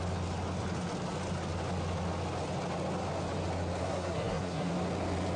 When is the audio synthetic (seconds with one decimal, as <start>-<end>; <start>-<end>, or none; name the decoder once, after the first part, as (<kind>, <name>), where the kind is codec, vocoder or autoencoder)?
3.8-4.7 (codec, SNAC)